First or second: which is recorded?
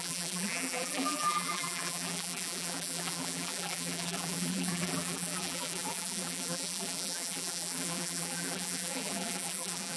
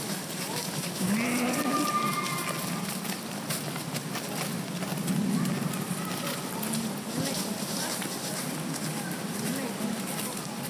second